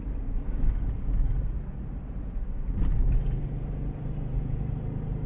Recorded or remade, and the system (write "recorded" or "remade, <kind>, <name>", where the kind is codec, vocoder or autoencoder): recorded